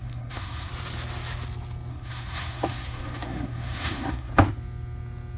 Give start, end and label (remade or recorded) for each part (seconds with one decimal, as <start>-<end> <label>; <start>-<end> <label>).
0.0-0.7 remade; 0.7-1.9 recorded; 1.9-4.3 remade; 4.3-5.4 recorded